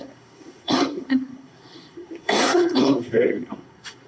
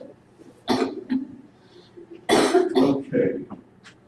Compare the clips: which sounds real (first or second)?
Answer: second